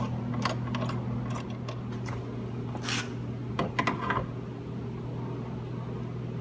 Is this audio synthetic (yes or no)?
no